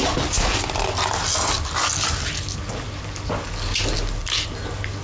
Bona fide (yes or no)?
yes